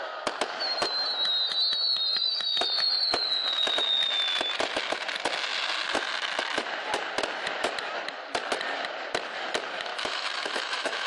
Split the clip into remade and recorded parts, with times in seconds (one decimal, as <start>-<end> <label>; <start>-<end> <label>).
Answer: 0.0-9.9 recorded; 9.9-11.1 remade